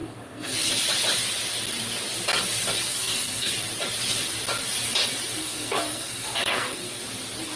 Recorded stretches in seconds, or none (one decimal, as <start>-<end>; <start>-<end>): 0.7-2.9; 3.5-5.4; 7.0-7.6